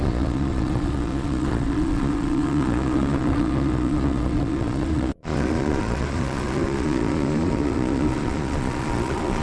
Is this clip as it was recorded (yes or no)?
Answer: no